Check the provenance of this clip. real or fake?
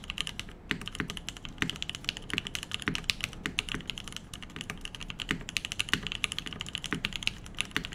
real